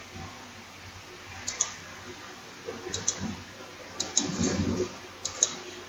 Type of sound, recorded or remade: recorded